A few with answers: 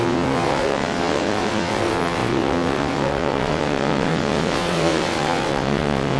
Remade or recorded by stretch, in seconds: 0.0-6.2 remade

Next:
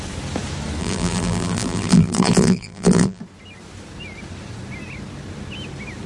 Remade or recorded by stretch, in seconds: 0.0-0.8 recorded; 0.8-3.2 remade; 3.2-6.1 recorded

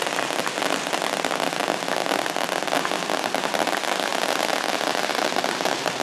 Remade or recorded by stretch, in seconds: 0.0-6.0 recorded

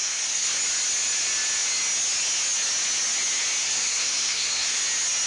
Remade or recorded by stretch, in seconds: 0.0-0.6 remade; 0.6-3.6 recorded; 3.6-4.8 remade; 4.8-5.3 recorded

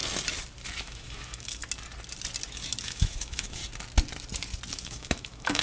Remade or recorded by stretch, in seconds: 0.0-0.8 recorded; 0.8-1.6 remade; 1.6-2.8 recorded; 2.8-3.6 remade; 3.6-4.7 recorded; 4.7-5.6 remade